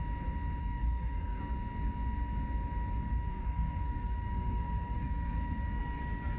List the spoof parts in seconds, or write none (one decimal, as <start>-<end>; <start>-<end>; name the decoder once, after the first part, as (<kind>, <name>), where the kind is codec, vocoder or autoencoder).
0.6-1.4 (codec, SNAC); 3.3-6.0